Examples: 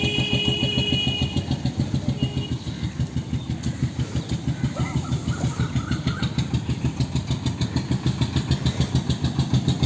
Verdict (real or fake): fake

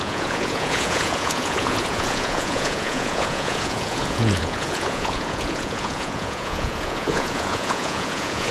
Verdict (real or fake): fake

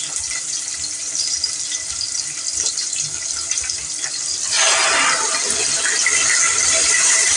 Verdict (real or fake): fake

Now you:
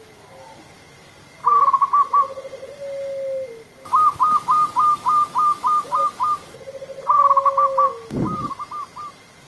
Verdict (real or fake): real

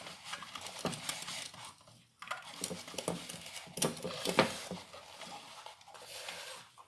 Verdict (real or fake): real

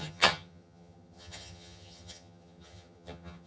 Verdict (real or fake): fake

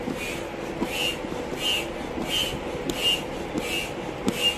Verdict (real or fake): real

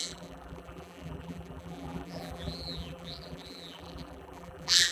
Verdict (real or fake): fake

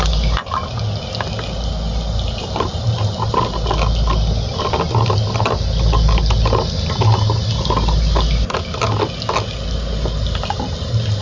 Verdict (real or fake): real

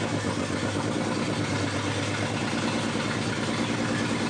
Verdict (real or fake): real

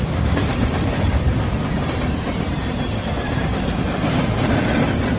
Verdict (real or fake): fake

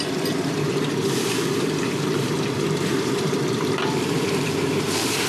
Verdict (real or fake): fake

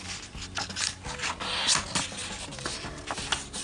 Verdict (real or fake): real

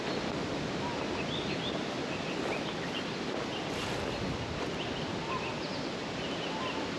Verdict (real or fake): real